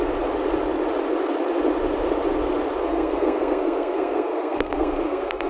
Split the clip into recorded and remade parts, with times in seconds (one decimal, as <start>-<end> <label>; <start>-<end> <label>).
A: 0.0-2.8 recorded; 2.8-5.5 remade